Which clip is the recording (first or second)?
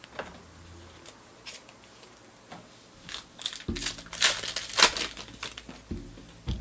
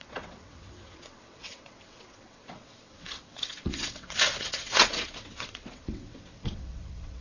first